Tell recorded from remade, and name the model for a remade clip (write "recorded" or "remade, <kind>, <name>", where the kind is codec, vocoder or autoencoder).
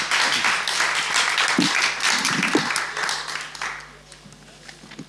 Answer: recorded